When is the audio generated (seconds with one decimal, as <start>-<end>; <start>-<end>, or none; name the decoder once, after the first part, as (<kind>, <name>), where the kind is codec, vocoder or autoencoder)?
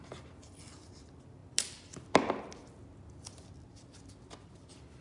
none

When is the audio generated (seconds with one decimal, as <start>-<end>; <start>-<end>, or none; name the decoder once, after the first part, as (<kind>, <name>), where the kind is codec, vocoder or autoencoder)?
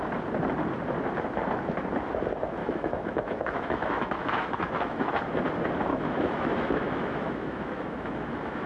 2.6-5.1 (autoencoder, DAC-VAE); 5.9-8.7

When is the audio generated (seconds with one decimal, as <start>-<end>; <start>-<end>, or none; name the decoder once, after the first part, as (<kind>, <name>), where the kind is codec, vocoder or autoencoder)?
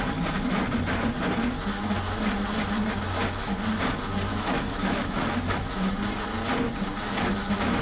4.3-5.9 (autoencoder, DAC-VAE); 6.9-7.8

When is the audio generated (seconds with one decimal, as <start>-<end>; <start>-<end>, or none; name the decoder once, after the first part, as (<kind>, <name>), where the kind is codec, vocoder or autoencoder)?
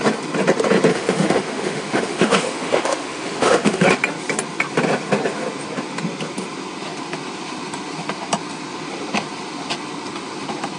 0.9-3.9 (autoencoder, DAC-VAE)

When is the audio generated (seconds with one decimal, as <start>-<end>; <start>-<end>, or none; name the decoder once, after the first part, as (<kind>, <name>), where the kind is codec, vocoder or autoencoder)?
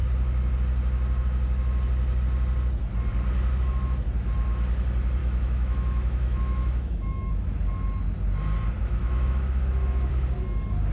5.2-7.3 (autoencoder, DAC-VAE); 8.8-10.1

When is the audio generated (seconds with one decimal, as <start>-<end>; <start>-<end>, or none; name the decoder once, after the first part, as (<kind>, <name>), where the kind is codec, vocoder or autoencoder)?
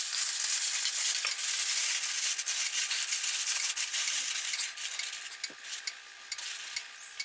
none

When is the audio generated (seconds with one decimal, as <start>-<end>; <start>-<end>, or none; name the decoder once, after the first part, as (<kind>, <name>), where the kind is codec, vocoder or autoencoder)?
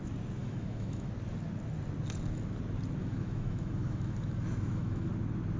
0.4-1.1 (autoencoder, DAC-VAE); 3.0-5.1